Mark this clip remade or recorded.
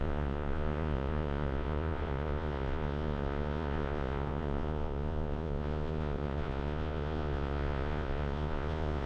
remade